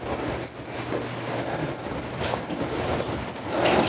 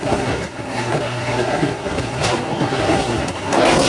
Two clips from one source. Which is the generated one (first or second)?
second